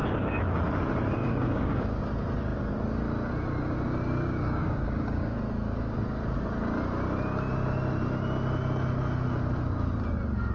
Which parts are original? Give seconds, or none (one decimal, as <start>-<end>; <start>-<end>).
0.0-1.2; 2.0-4.2; 5.4-10.5